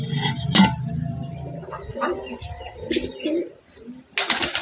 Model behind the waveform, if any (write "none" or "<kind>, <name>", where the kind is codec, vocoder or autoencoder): none